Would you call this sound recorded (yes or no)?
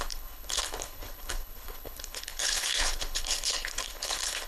no